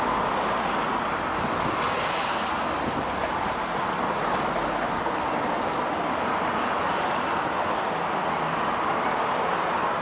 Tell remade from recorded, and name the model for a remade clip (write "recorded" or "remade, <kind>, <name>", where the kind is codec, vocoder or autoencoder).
recorded